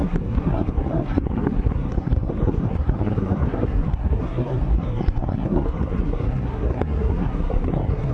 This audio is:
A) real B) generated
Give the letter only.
B